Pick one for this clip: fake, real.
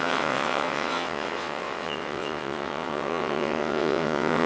fake